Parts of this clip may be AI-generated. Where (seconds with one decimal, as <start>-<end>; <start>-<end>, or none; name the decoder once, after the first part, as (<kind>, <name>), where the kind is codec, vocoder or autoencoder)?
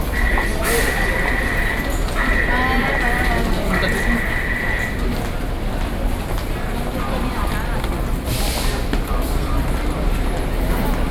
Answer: none